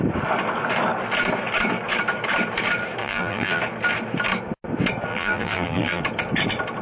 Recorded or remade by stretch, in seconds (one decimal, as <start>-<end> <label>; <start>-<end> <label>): 0.0-3.0 recorded; 3.0-3.6 remade; 3.6-5.1 recorded; 5.1-6.0 remade; 6.0-6.8 recorded